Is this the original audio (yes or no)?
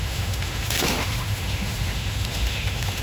no